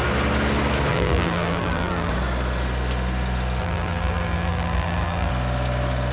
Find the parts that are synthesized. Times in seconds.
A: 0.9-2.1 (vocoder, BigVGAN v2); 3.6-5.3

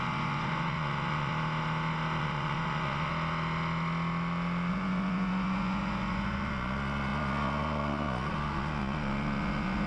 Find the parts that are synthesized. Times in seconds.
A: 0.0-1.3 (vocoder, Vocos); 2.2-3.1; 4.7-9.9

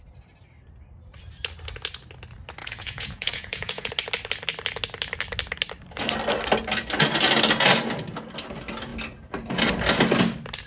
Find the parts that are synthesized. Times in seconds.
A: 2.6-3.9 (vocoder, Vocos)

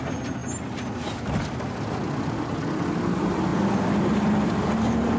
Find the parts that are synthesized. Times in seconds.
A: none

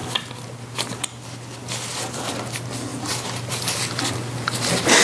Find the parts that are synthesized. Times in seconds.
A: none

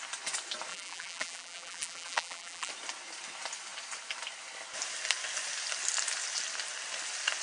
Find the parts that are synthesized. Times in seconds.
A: 0.7-2.7 (vocoder, BigVGAN v2)

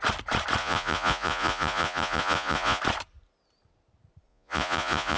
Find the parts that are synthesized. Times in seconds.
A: 0.6-2.8 (vocoder, Vocos); 4.3-5.2